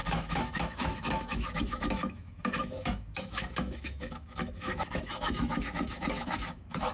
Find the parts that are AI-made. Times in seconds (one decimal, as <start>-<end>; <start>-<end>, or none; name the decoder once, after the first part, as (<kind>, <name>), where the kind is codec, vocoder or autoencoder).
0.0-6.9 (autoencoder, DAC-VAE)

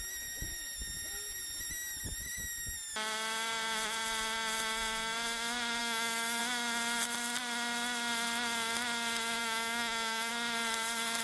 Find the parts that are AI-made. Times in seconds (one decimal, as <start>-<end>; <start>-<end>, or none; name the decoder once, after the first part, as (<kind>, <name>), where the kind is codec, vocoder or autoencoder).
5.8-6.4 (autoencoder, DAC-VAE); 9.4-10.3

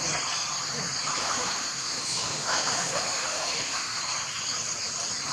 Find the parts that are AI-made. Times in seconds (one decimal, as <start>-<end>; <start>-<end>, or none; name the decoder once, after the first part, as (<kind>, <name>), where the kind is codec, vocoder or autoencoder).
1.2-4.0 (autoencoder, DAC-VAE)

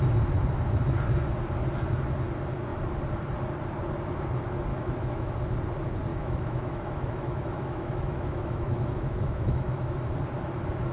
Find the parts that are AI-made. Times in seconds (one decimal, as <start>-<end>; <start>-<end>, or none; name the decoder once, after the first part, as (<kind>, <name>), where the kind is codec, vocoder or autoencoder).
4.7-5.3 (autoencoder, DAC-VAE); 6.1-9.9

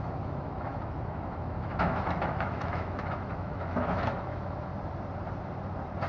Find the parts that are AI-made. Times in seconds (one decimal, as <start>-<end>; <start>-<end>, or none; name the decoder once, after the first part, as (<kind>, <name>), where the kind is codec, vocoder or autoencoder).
0.0-4.7 (autoencoder, DAC-VAE)

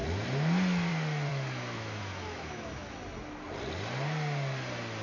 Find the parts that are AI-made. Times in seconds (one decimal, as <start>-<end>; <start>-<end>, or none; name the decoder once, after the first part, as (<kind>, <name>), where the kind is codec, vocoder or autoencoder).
1.3-3.0 (autoencoder, DAC-VAE)

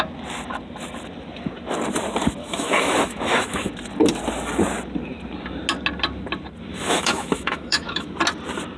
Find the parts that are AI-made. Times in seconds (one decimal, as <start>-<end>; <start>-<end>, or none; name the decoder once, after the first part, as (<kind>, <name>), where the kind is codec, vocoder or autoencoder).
2.4-3.7 (autoencoder, DAC-VAE); 6.7-8.1

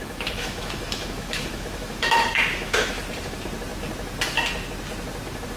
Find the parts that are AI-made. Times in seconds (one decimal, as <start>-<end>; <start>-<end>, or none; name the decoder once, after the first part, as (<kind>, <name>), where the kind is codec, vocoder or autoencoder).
0.0-3.0 (autoencoder, DAC-VAE)